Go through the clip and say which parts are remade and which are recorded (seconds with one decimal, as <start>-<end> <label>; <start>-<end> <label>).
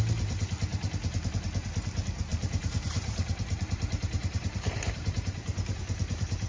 0.0-2.3 recorded; 2.3-6.5 remade